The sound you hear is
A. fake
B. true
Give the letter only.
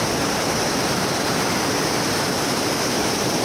A